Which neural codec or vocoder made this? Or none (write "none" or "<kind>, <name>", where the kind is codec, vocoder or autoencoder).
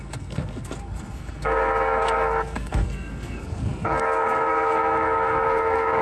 codec, SNAC